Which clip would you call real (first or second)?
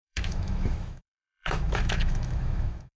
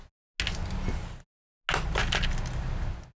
second